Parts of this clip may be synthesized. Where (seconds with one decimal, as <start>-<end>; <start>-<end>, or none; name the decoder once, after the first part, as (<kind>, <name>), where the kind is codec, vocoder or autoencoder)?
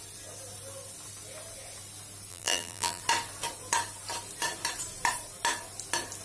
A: 2.3-3.0 (vocoder, BigVGAN v2)